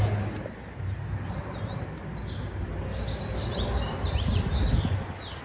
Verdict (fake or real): real